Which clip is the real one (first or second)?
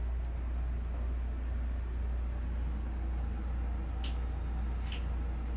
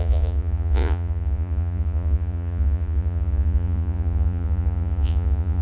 first